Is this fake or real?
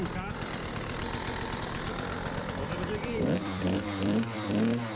fake